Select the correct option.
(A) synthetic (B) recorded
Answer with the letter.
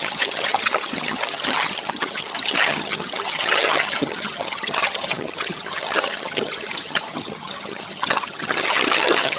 A